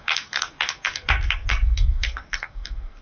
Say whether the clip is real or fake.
fake